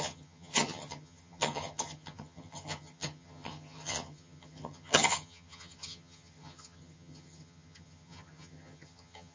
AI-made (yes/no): yes